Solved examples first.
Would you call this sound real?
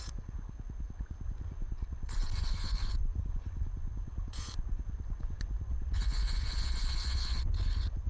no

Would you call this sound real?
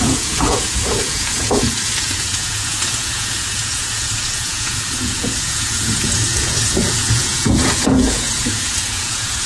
no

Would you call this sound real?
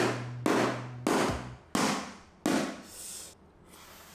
yes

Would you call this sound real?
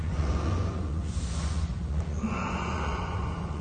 no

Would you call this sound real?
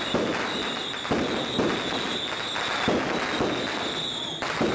yes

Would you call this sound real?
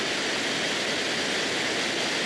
yes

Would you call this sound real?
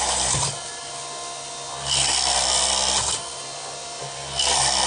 yes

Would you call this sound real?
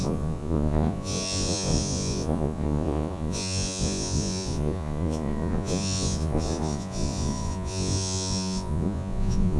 no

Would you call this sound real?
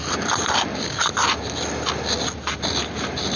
yes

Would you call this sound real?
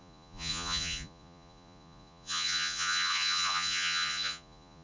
no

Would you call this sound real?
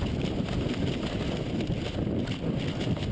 yes